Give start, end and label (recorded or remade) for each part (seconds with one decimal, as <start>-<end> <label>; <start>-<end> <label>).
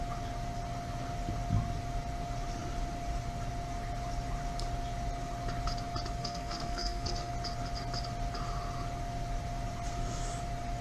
0.0-6.2 recorded; 6.2-7.3 remade; 7.3-10.8 recorded